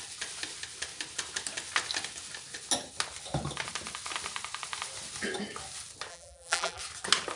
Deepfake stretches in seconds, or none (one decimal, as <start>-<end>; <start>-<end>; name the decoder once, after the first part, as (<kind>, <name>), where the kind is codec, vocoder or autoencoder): 6.1-6.8 (vocoder, BigVGAN v2)